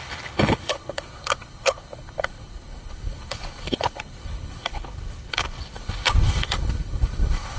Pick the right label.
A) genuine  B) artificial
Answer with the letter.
B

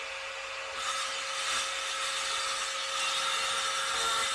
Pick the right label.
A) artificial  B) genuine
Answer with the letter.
B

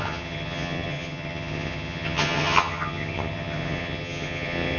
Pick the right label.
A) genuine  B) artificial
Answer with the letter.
B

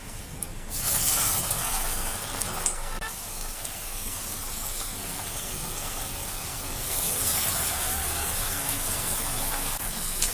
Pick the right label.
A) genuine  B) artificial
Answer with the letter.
B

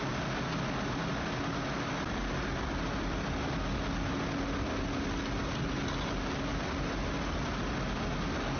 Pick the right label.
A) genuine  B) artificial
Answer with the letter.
A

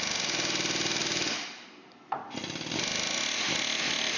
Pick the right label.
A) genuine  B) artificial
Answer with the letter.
A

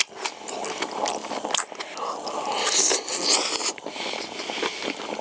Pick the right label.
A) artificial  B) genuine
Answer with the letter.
B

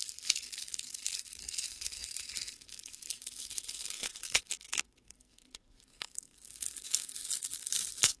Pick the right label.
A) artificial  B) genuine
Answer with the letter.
A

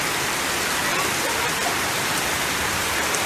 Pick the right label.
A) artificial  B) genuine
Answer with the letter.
A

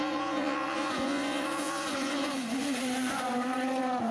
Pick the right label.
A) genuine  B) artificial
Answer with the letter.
B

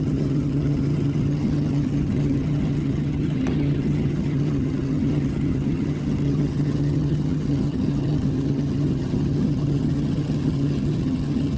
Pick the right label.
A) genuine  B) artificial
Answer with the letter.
B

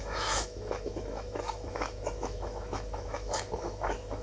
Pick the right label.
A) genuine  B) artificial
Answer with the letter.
B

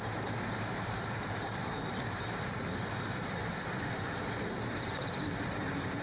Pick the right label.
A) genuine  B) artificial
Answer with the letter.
B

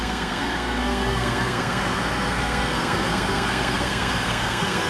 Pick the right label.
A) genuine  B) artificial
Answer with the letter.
B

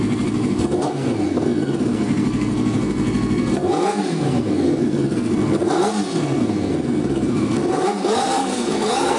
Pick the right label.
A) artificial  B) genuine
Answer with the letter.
A